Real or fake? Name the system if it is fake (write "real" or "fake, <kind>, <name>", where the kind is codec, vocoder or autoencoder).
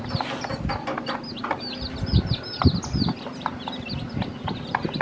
real